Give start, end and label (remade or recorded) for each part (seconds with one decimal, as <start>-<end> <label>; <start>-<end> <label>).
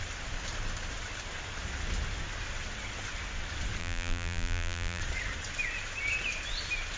0.0-3.8 recorded; 3.8-5.0 remade; 5.0-7.0 recorded